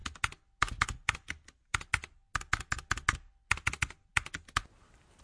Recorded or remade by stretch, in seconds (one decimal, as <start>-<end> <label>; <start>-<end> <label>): 0.0-5.2 recorded